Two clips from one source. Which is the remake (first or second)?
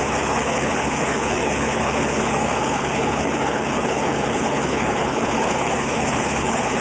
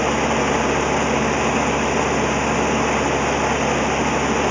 first